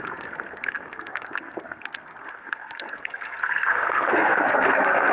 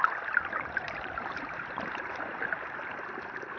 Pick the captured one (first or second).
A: second